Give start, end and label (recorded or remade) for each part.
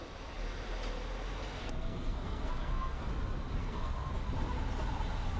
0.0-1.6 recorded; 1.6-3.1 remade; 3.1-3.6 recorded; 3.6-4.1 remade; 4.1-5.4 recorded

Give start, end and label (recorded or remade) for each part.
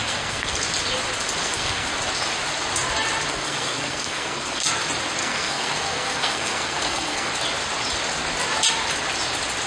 0.0-0.6 remade; 0.6-1.4 recorded; 1.4-1.9 remade; 1.9-3.3 recorded; 3.3-4.8 remade; 4.8-5.2 recorded; 5.2-7.3 remade; 7.3-9.7 recorded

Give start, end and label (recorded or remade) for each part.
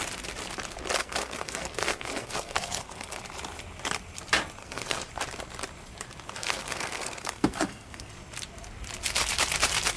0.0-1.0 recorded; 1.0-3.2 remade; 3.2-4.6 recorded; 4.6-5.1 remade; 5.1-6.4 recorded; 6.4-8.1 remade; 8.1-10.0 recorded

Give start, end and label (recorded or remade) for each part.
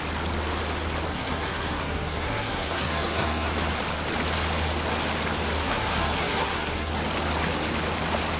0.0-1.1 recorded; 1.1-3.5 remade; 3.5-5.6 recorded; 5.6-6.9 remade; 6.9-8.4 recorded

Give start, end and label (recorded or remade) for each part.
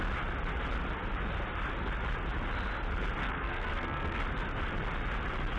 0.0-3.2 recorded; 3.2-4.2 remade; 4.2-5.6 recorded